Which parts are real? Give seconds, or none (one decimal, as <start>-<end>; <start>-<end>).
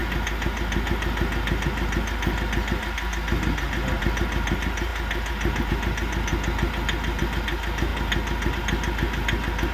0.0-9.7